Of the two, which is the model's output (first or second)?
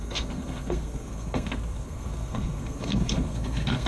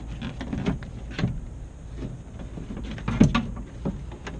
first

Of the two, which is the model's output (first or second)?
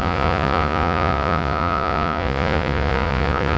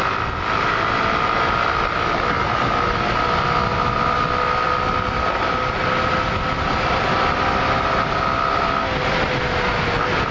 first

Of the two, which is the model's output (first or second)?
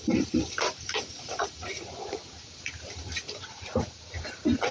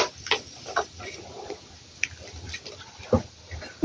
first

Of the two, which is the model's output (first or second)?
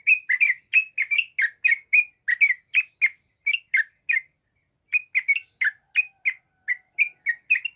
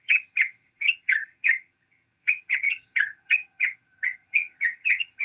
second